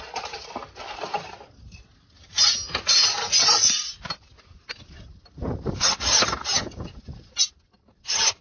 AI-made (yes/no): no